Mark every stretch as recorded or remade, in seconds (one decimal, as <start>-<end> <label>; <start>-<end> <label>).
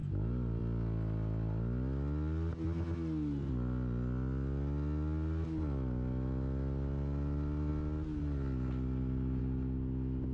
0.0-0.6 remade; 0.6-10.3 recorded